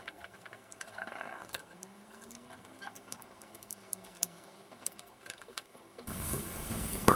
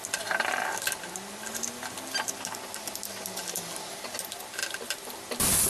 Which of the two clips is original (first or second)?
second